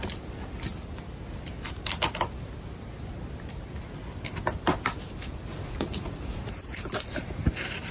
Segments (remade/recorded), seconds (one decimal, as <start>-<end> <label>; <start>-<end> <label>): 0.0-5.5 recorded; 5.5-6.5 remade; 6.5-7.9 recorded